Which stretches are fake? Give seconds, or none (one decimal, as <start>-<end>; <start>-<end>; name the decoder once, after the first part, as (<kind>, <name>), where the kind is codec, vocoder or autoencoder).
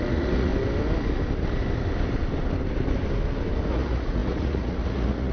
0.0-0.5 (vocoder, Vocos); 3.7-5.3